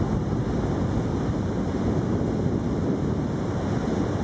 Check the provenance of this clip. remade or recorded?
recorded